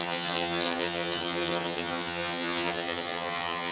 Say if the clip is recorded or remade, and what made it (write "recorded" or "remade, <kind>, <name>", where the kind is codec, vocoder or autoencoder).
remade, vocoder, HiFi-GAN